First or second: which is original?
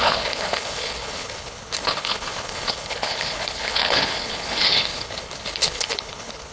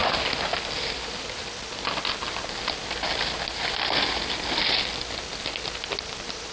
second